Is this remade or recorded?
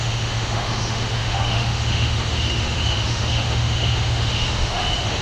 remade